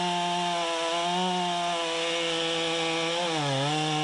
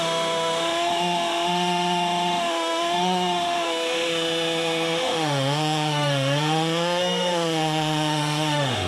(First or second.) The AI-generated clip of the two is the second